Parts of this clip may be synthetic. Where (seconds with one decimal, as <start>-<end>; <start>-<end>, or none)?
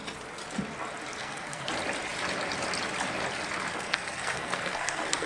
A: 1.2-1.7; 3.7-5.3